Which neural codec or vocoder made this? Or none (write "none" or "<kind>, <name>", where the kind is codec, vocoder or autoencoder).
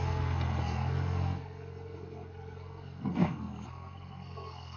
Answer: codec, SNAC